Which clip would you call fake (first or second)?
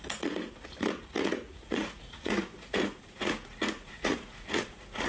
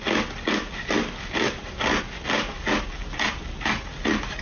first